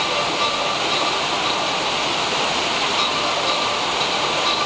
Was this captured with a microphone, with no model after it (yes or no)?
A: yes